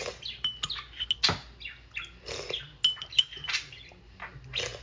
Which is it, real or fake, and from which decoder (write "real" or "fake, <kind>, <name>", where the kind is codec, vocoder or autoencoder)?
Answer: real